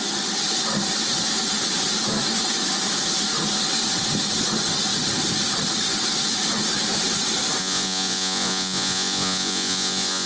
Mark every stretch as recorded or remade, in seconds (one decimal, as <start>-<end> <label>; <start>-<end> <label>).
0.0-7.6 recorded; 7.6-10.3 remade